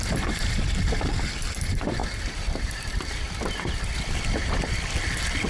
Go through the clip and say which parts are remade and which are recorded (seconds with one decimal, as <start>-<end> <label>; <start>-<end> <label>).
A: 0.0-2.0 recorded; 2.0-3.9 remade; 3.9-5.5 recorded